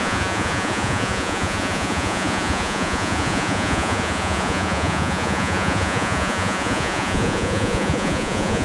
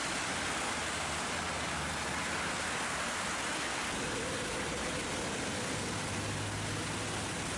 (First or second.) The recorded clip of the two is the second